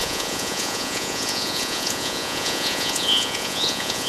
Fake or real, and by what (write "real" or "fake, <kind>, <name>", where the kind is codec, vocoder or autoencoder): fake, vocoder, Vocos